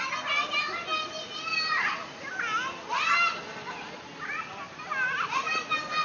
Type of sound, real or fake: real